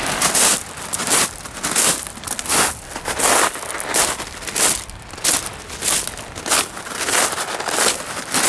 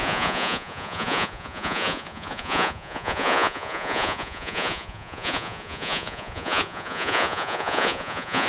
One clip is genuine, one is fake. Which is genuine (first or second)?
first